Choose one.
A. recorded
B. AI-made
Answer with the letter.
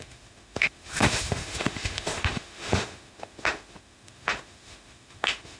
B